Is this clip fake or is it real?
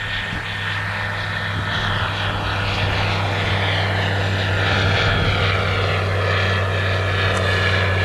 real